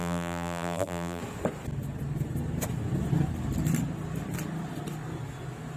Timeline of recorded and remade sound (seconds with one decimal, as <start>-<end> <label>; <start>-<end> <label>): 0.0-1.2 remade; 1.2-5.8 recorded